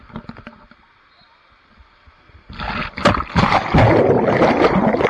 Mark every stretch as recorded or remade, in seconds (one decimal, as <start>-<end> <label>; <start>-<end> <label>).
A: 0.0-5.1 recorded

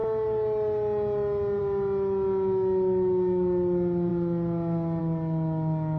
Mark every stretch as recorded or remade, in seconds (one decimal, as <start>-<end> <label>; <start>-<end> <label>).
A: 0.0-6.0 recorded

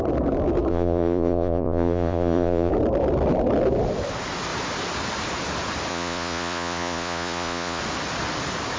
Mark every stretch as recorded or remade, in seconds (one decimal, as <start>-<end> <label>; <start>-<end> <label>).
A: 0.0-0.7 recorded; 0.7-2.7 remade; 2.7-5.9 recorded; 5.9-7.8 remade; 7.8-8.8 recorded

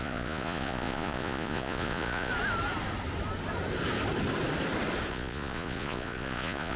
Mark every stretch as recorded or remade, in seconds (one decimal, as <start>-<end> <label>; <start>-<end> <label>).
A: 0.0-2.3 remade; 2.3-5.1 recorded; 5.1-6.8 remade

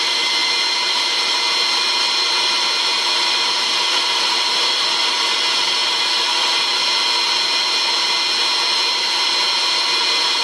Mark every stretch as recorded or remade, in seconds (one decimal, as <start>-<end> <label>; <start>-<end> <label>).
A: 0.0-10.4 recorded

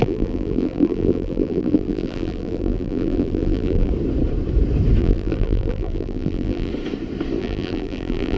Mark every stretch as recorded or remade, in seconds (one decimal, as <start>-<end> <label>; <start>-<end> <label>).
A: 0.0-3.9 remade; 3.9-5.0 recorded; 5.0-6.7 remade; 6.7-7.4 recorded; 7.4-8.4 remade